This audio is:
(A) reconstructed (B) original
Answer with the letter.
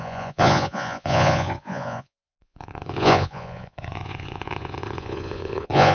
A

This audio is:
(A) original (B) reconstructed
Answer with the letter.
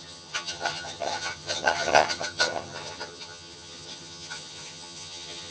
B